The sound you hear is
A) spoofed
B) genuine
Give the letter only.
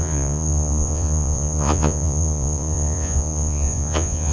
A